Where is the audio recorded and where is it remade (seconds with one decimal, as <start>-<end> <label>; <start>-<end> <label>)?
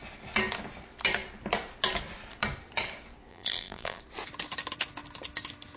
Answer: 0.0-3.3 recorded; 3.3-4.0 remade; 4.0-5.8 recorded